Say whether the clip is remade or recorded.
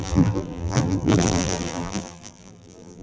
remade